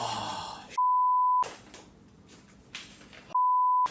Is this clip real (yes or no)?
yes